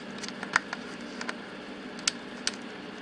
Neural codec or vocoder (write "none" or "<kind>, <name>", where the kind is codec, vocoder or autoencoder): none